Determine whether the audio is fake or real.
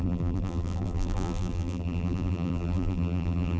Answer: fake